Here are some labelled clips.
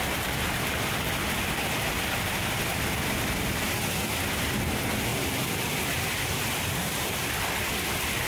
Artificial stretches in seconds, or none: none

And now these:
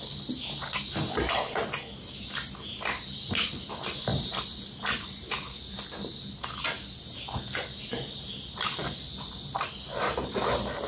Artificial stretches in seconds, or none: 4.1-6.1; 7.9-9.7

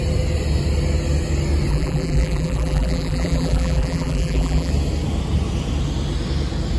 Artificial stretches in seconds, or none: 1.7-4.7

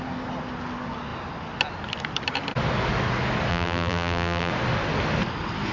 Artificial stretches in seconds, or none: 3.5-4.5

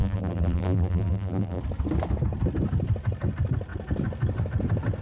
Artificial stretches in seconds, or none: 0.0-1.6